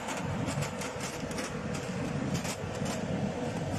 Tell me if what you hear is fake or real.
real